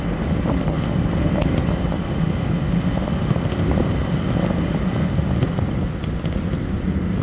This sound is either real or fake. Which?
real